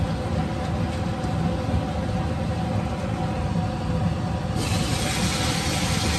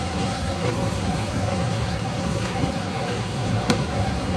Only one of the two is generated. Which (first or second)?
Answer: second